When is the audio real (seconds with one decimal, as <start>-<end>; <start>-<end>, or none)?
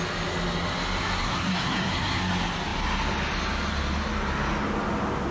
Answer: 0.0-1.2; 2.2-5.3